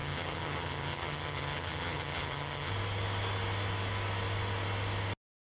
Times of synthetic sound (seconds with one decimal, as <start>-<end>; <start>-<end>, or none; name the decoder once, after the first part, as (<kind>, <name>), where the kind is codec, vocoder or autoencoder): 0.0-2.7 (vocoder, HiFi-GAN)